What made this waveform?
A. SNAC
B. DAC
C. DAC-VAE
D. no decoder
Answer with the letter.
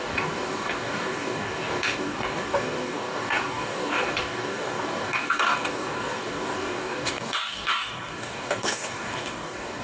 B